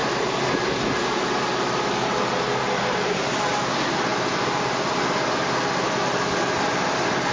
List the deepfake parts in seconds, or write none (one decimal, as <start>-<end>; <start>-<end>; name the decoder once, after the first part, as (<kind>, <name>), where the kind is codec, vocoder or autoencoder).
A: none

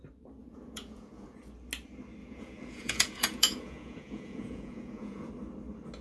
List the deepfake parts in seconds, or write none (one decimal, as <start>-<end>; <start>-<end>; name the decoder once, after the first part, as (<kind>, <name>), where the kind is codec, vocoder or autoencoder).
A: 0.4-1.4 (vocoder, Vocos); 2.2-5.3